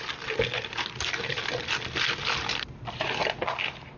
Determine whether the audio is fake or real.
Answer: real